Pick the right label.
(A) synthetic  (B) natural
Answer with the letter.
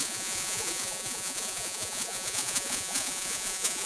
A